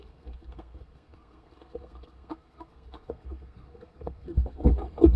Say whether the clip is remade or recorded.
remade